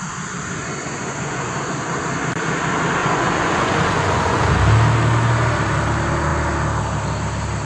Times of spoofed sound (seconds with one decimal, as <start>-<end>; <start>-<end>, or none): 0.6-1.9; 3.0-4.6